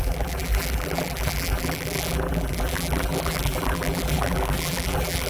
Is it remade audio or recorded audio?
remade